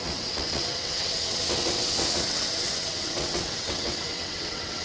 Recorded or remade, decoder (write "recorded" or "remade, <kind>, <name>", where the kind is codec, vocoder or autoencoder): remade, vocoder, WaveNeXt